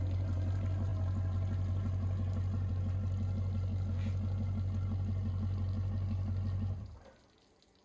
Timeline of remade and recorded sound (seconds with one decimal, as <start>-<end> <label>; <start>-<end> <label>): 0.0-7.8 recorded